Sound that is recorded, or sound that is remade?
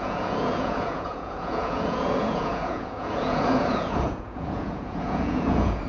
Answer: remade